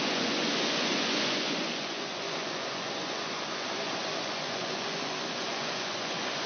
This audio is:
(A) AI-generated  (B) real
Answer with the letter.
A